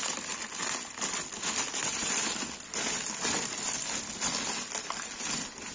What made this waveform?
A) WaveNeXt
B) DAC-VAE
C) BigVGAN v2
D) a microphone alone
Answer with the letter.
D